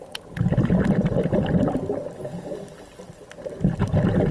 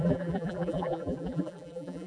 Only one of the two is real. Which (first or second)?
first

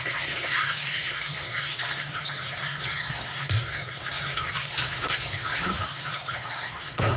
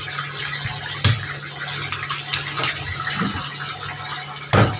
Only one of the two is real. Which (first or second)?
second